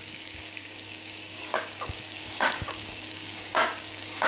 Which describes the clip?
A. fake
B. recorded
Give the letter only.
A